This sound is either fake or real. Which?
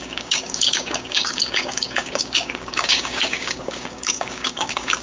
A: fake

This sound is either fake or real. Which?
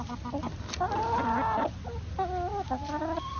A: real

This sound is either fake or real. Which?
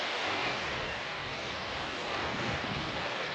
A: fake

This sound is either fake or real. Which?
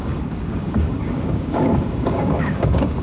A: fake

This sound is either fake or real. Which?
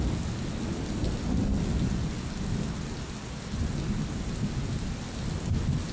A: real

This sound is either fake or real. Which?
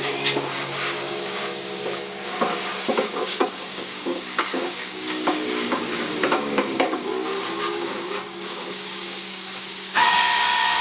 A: fake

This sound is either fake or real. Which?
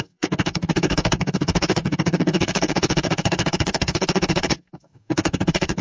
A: fake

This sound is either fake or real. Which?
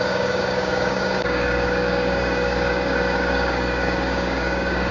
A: fake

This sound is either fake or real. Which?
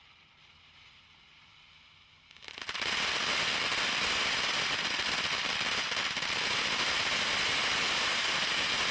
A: real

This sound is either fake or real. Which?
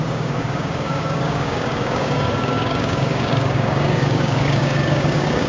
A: fake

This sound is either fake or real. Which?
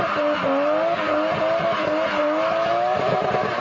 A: real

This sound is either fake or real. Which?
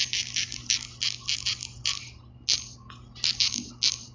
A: real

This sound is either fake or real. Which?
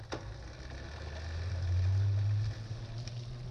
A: real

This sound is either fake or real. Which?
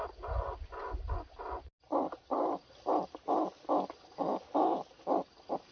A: real